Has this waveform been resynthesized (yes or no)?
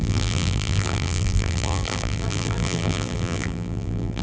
yes